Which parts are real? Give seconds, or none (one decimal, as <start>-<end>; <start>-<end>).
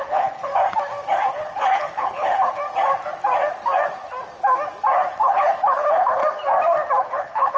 0.5-1.3; 2.6-5.1; 6.2-7.0